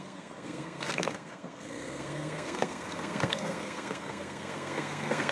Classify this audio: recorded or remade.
remade